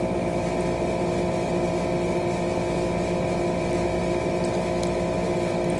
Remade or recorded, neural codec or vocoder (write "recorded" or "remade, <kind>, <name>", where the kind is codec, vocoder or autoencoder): recorded